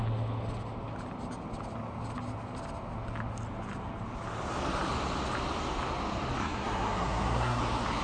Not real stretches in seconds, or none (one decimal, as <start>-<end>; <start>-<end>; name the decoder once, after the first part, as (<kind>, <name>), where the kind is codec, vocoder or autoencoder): 6.4-7.6 (codec, SNAC)